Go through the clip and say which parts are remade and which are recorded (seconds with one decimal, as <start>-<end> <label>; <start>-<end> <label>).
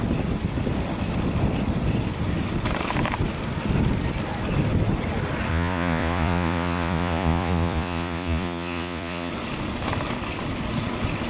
0.0-5.5 recorded; 5.5-9.3 remade; 9.3-11.3 recorded